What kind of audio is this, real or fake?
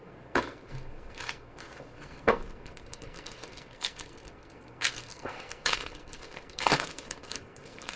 fake